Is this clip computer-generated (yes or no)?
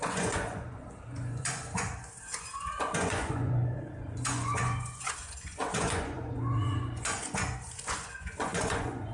yes